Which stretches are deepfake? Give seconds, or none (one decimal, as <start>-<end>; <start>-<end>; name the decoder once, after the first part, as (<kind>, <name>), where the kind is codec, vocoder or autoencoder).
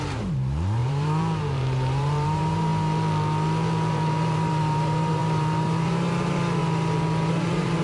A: 0.0-2.7 (vocoder, BigVGAN v2); 3.9-6.6; 7.3-7.8